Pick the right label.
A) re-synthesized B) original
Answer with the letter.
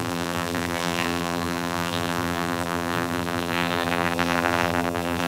A